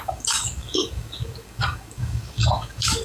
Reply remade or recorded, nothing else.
remade